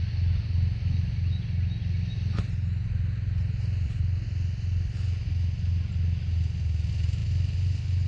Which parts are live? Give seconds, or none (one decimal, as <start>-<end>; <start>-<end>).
0.0-8.1